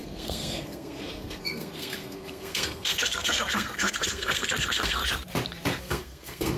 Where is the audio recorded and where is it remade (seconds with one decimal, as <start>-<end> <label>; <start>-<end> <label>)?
0.0-5.0 remade; 5.0-5.8 recorded; 5.8-6.6 remade